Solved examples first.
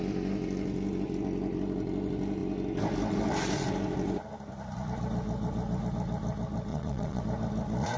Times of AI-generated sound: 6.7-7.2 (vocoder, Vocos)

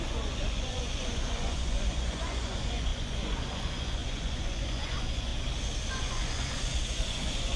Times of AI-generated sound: 0.0-5.3 (vocoder, Vocos); 5.9-7.6

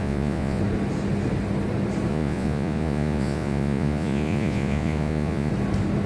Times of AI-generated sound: 0.0-0.6 (vocoder, Vocos); 2.1-5.5

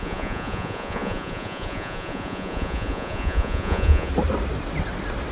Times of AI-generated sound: 0.0-4.1 (vocoder, Vocos)

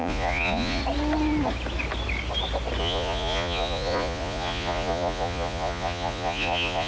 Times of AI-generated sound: 0.0-0.8 (vocoder, Vocos); 2.8-6.9

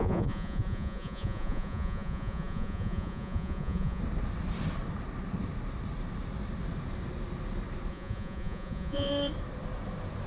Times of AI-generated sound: 0.0-4.0 (vocoder, Vocos); 7.9-9.1

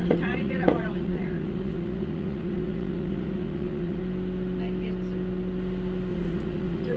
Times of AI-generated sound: 0.0-4.0 (vocoder, Vocos); 6.1-7.0